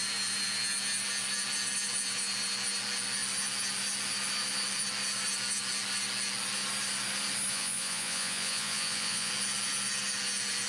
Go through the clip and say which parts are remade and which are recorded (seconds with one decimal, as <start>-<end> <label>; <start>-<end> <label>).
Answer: 0.0-7.5 recorded; 7.5-9.3 remade; 9.3-10.7 recorded

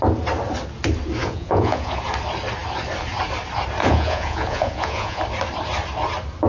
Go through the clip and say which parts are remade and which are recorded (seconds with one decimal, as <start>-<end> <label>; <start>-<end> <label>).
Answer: 0.0-1.2 recorded; 1.2-2.0 remade; 2.0-3.8 recorded; 3.8-5.2 remade; 5.2-6.5 recorded

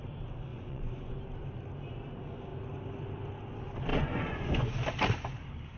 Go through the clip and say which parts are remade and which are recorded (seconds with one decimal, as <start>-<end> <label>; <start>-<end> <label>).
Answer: 0.0-0.5 recorded; 0.5-1.1 remade; 1.1-3.9 recorded; 3.9-4.7 remade; 4.7-5.8 recorded

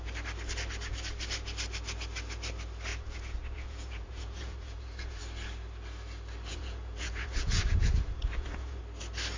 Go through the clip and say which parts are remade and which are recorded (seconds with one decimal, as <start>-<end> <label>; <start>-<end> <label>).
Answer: 0.0-2.9 recorded; 2.9-5.2 remade; 5.2-6.5 recorded; 6.5-8.8 remade; 8.8-9.4 recorded

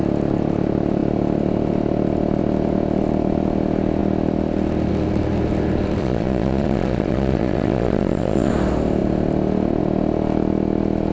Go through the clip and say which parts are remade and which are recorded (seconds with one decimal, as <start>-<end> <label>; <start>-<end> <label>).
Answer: 0.0-6.0 recorded; 6.0-8.5 remade; 8.5-11.1 recorded